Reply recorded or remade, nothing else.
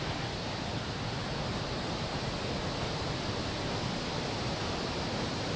recorded